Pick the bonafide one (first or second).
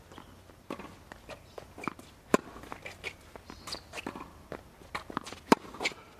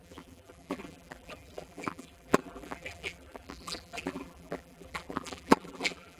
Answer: first